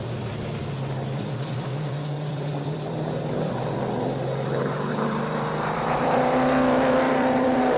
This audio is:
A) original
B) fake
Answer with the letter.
B